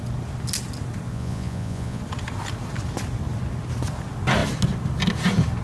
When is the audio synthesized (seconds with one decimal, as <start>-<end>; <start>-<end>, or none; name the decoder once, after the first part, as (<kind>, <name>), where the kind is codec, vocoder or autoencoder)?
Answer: 1.1-2.0 (vocoder, Vocos)